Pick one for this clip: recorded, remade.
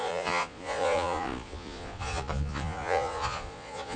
remade